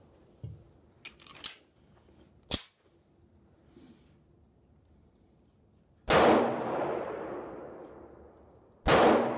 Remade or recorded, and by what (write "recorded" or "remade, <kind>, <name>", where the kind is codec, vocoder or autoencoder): recorded